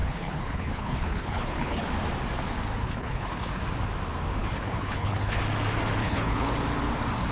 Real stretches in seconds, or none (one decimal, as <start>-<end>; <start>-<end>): 1.9-2.8; 3.6-4.4; 5.4-6.0; 6.5-7.3